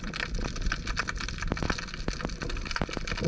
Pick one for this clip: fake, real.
real